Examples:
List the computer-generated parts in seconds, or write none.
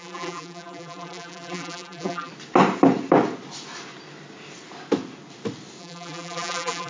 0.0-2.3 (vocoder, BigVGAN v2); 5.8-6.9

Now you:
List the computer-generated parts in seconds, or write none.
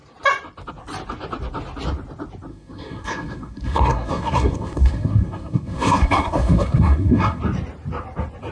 2.5-7.4 (codec, SNAC)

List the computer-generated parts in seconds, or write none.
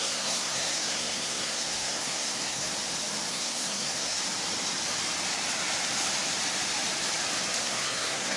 0.0-2.7 (codec, SNAC); 3.3-4.2; 7.6-8.4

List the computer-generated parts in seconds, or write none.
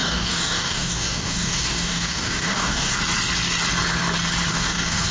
0.0-2.9 (codec, DAC); 4.5-5.1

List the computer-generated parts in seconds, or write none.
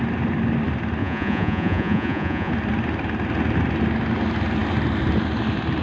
1.0-2.5 (vocoder, Vocos)